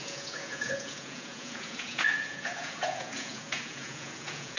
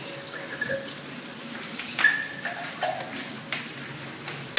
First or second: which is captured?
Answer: second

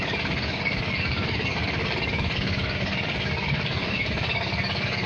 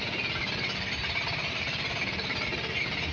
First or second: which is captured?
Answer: second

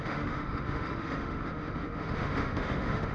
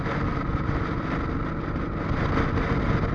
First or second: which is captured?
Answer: second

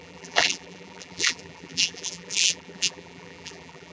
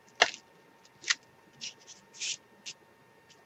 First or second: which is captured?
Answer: second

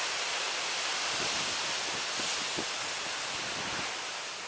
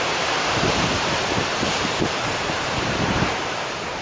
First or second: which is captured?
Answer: first